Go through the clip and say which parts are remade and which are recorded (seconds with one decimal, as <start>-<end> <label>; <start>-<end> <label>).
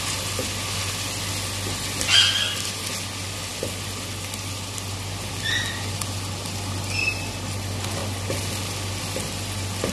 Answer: 0.0-9.9 recorded